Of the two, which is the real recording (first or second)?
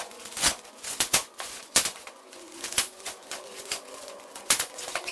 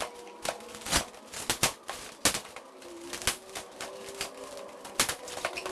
second